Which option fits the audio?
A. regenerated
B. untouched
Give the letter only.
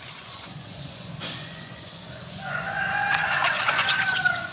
A